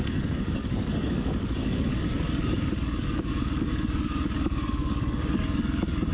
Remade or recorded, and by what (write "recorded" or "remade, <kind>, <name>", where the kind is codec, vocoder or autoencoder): remade, codec, DAC